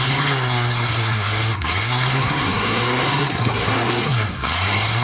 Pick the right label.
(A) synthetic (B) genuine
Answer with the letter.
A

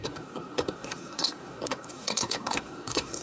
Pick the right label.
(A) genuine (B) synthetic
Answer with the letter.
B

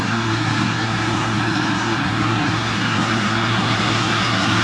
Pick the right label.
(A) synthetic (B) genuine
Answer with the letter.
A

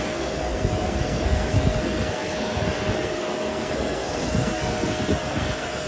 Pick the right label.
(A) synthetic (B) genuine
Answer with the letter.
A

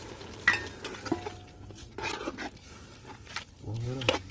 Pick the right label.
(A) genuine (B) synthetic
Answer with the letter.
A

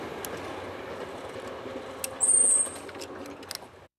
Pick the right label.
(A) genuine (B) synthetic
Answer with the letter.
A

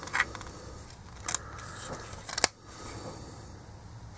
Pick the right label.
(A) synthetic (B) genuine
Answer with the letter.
B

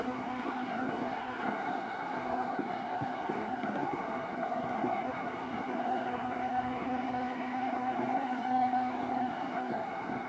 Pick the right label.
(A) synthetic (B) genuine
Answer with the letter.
A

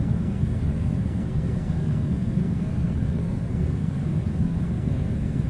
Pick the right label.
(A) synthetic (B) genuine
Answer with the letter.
A